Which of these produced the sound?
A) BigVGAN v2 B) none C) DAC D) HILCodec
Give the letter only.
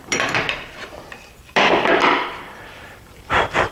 A